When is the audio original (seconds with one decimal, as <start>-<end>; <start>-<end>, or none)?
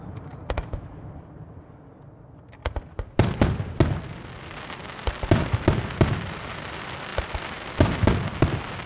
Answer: 0.0-8.9